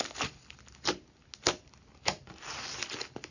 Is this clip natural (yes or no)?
yes